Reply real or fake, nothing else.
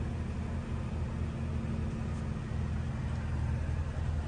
real